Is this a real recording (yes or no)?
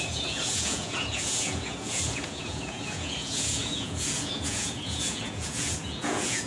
no